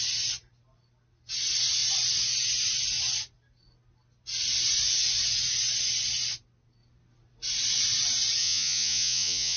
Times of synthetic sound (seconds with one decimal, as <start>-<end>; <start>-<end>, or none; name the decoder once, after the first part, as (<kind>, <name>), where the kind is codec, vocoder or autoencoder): 8.4-9.6 (vocoder, Vocos)